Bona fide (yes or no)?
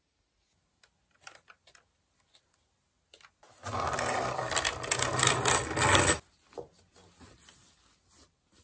yes